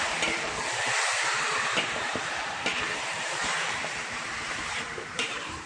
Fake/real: fake